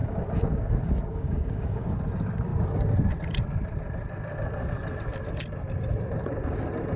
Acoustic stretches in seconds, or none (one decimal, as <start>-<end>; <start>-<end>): 2.0-7.0